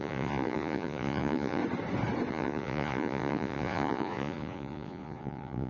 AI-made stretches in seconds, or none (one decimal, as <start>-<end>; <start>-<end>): 0.0-1.6; 2.3-5.7